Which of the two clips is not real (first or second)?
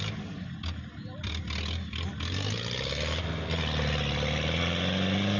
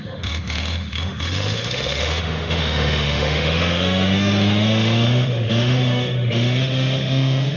second